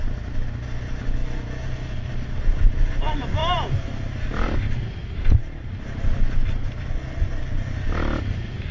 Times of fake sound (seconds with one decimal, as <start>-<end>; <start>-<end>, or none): none